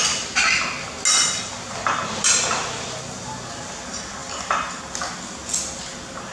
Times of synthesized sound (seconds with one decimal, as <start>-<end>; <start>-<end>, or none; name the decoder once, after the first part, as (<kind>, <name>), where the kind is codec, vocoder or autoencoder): 4.2-4.8 (vocoder, BigVGAN v2)